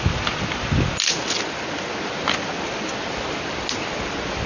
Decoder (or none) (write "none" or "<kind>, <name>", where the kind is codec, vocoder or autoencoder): none